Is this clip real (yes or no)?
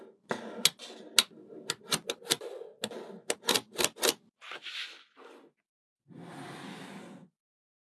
yes